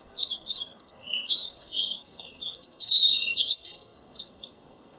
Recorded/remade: remade